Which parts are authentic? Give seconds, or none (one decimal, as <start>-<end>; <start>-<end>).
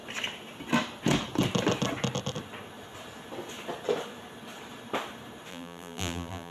0.0-5.5